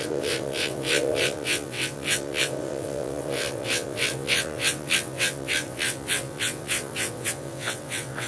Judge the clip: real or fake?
fake